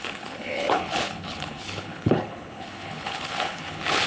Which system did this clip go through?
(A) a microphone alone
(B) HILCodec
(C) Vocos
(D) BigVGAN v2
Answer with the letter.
B